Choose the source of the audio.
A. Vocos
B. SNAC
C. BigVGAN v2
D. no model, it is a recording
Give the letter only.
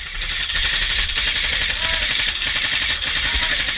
D